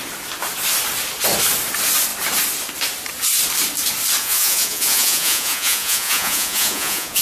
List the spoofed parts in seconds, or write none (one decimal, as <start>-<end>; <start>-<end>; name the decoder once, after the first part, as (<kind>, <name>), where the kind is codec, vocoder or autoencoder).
4.2-7.2 (vocoder, Vocos)